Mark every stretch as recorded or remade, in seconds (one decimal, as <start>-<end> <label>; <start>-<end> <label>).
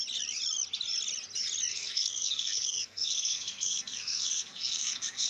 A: 0.0-1.7 recorded; 1.7-5.3 remade